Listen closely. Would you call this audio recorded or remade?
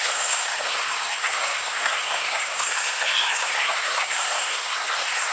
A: remade